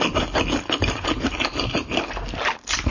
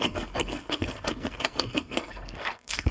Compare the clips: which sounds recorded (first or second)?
first